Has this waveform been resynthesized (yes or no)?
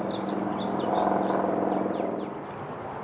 no